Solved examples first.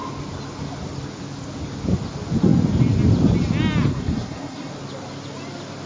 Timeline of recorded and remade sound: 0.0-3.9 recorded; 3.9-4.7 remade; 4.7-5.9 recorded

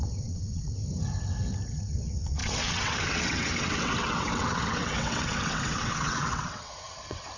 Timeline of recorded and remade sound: 0.0-0.8 remade; 0.8-1.7 recorded; 1.7-7.4 remade

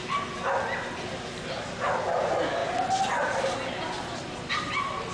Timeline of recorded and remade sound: 0.0-5.1 recorded

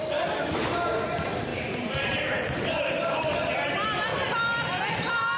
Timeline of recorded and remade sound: 0.0-4.1 remade; 4.1-4.9 recorded; 4.9-5.4 remade

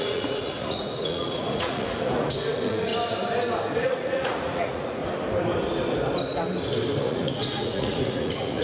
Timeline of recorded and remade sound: 0.0-2.9 remade; 2.9-3.7 recorded; 3.7-5.0 remade; 5.0-7.0 recorded; 7.0-8.6 remade